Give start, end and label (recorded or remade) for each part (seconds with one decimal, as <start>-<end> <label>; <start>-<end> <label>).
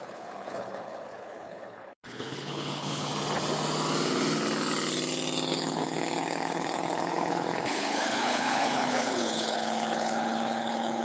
0.0-3.1 remade; 3.1-5.5 recorded; 5.5-11.0 remade